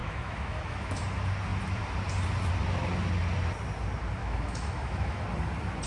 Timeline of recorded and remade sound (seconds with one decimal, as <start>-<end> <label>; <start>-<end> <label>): 0.0-1.0 remade; 1.0-4.2 recorded; 4.2-5.2 remade; 5.2-5.9 recorded